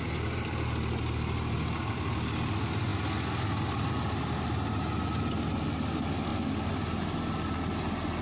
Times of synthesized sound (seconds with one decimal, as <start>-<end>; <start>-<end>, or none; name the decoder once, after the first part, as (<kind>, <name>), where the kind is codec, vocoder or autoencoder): none